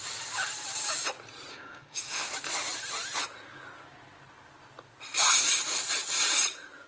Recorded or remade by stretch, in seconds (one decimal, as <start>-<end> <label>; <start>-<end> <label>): 0.0-1.5 recorded; 1.5-2.3 remade; 2.3-6.9 recorded